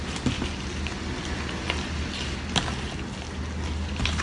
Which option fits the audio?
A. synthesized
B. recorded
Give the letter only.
B